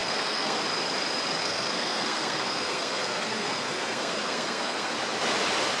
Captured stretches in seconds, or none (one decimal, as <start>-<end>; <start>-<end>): 0.6-1.4; 4.9-5.8